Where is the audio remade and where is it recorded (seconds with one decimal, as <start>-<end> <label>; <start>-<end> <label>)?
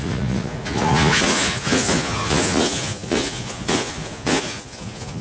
0.0-5.2 remade